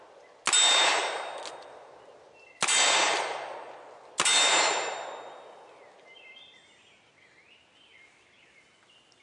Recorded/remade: recorded